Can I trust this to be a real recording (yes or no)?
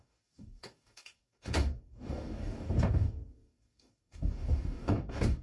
no